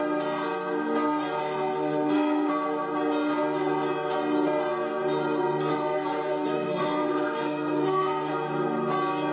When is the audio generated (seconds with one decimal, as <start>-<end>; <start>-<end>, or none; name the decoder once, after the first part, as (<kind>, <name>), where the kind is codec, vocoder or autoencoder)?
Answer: 1.4-2.5 (codec, SNAC); 5.7-8.3